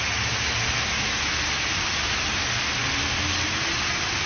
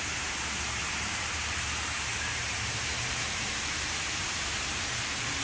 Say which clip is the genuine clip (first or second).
first